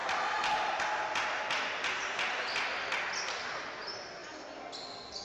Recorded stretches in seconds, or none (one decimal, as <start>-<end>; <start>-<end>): 0.0-5.2